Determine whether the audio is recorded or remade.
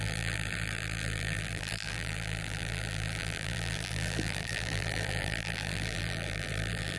remade